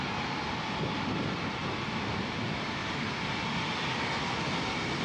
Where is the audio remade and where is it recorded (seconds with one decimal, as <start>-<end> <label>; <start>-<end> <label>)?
0.0-5.0 recorded